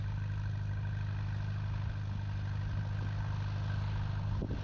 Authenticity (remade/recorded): recorded